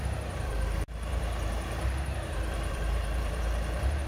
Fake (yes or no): yes